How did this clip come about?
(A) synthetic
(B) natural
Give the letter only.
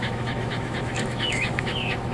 A